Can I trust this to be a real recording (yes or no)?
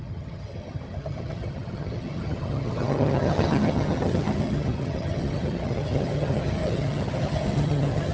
no